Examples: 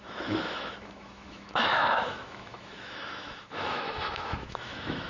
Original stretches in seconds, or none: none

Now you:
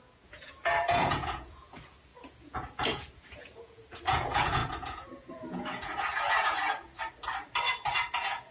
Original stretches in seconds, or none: 6.9-8.1

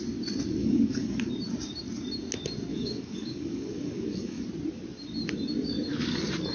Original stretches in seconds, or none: 0.0-0.6; 1.3-2.7; 4.4-6.5